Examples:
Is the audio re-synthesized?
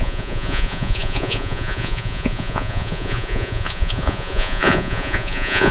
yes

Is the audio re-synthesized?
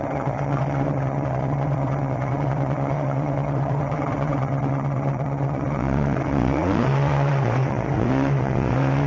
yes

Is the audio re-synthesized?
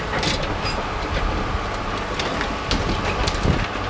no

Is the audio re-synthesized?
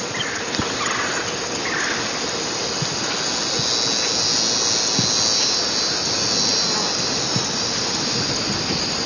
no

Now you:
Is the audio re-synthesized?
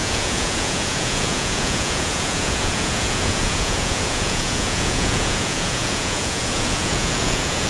yes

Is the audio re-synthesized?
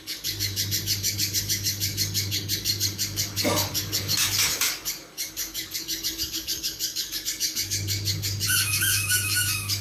yes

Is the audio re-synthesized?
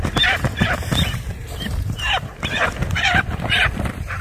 yes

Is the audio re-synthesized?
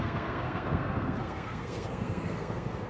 yes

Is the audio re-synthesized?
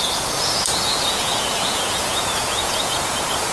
yes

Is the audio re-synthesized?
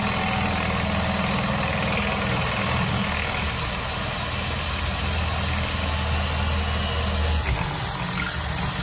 no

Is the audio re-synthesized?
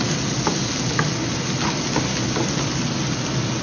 no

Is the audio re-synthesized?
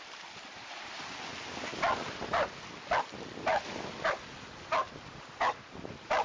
no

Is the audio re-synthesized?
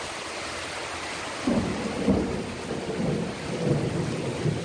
no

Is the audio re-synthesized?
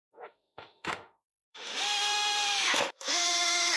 yes